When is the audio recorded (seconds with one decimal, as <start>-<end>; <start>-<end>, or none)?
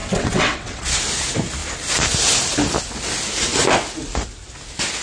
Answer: 1.0-5.0